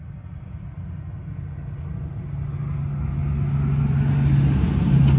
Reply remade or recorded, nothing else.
recorded